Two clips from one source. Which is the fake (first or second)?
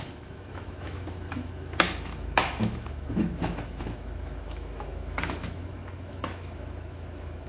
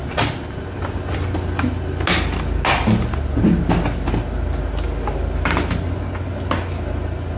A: first